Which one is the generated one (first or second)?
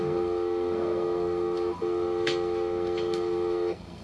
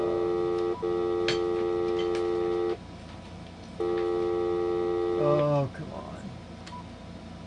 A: first